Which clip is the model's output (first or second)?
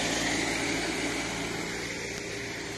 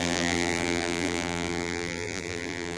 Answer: second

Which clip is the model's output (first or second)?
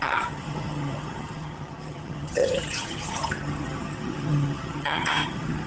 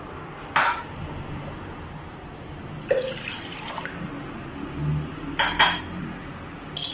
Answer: first